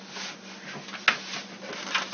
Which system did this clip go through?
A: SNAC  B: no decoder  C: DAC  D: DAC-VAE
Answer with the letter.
B